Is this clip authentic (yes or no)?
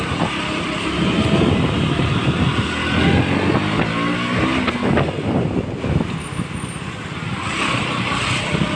yes